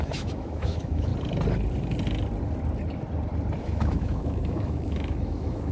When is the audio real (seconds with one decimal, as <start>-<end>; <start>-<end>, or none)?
1.1-3.6